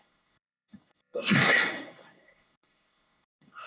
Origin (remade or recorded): remade